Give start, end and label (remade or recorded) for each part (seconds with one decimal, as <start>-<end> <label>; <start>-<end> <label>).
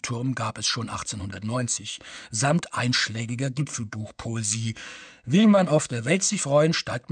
0.0-1.3 recorded; 1.3-2.6 remade; 2.6-3.0 recorded; 3.0-6.4 remade; 6.4-7.1 recorded